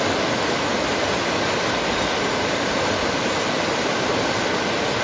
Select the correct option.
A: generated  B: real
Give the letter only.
B